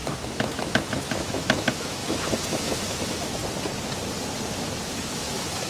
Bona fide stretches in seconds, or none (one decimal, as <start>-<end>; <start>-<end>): 3.4-4.9